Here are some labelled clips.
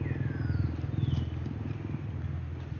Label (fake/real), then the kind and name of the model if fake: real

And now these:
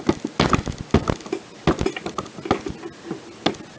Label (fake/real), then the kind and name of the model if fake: real